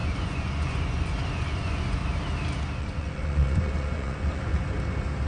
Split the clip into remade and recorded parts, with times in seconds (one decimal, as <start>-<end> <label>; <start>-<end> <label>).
0.0-2.0 remade; 2.0-2.8 recorded; 2.8-4.5 remade; 4.5-5.3 recorded